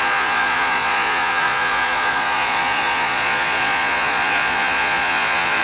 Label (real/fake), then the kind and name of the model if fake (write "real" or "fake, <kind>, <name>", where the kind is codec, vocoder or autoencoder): fake, vocoder, Vocos